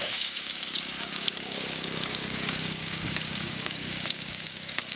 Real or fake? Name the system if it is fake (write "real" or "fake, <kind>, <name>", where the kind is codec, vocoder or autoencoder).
fake, codec, DAC